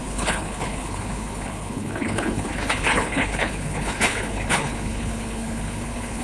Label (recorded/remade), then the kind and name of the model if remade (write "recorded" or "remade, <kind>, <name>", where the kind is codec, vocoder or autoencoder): remade, codec, HILCodec